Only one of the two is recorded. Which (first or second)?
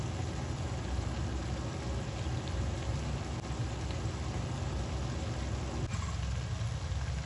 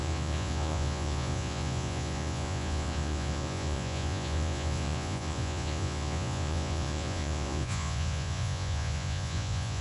first